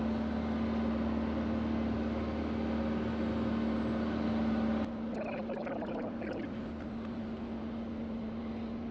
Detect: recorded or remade recorded